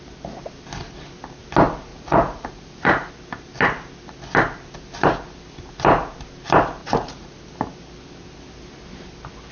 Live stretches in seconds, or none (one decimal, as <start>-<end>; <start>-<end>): 0.0-1.9; 3.1-6.8; 7.4-9.5